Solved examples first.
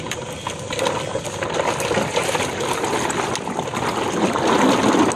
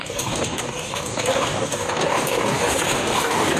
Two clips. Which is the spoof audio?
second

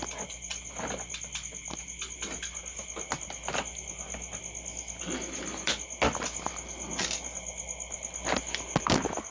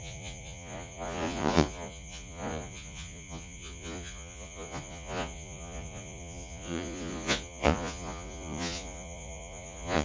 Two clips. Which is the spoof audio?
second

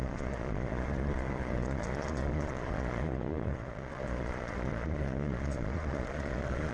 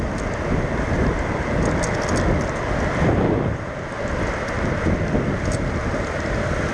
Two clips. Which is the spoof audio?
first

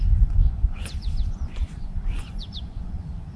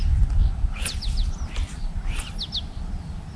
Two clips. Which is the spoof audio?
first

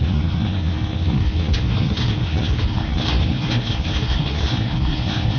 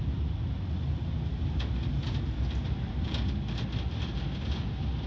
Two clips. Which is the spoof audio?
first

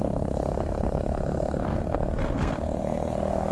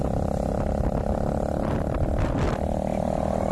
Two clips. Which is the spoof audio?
first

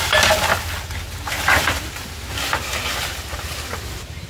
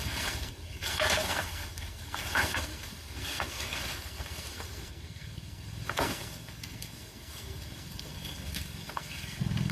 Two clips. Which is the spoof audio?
second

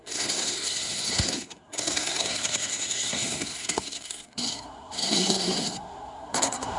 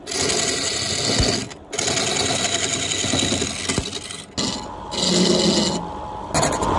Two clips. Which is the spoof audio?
first